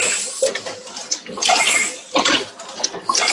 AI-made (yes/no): no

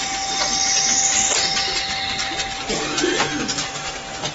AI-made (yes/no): no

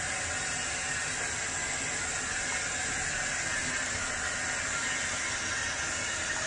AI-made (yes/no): no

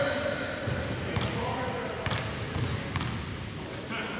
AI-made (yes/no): no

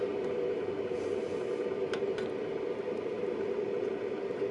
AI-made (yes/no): no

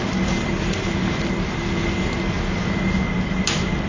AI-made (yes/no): no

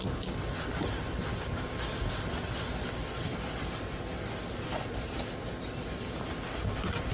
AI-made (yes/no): no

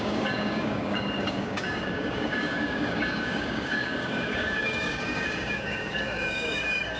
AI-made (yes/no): yes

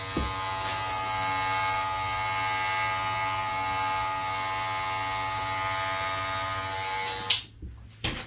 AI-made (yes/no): no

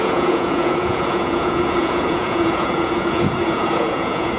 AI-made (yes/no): yes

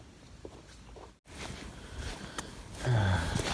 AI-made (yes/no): no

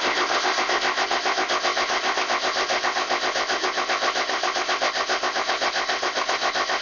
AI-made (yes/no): yes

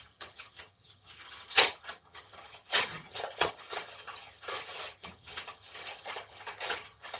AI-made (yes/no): yes